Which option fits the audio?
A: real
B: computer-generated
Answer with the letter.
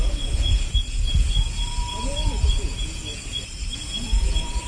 B